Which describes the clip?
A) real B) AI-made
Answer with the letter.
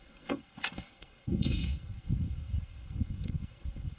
B